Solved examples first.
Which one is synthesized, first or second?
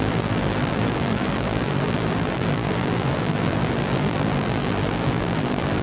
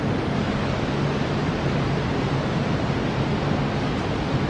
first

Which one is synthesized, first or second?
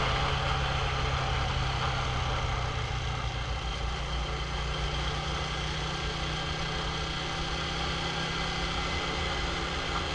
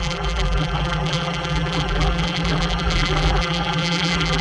second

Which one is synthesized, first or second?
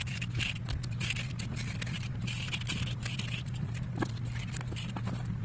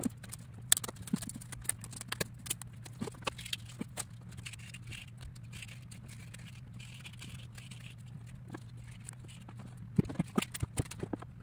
first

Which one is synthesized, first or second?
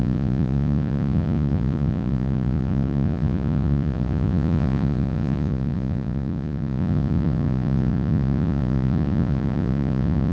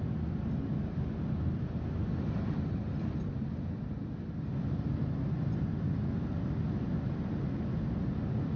first